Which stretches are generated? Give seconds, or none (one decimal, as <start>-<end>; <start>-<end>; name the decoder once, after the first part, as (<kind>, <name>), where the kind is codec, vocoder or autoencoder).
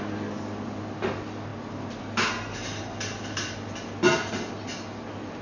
none